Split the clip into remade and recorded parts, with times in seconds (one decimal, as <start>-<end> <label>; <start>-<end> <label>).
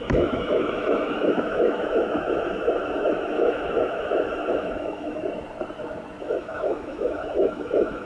0.0-5.2 remade; 5.2-6.2 recorded; 6.2-8.1 remade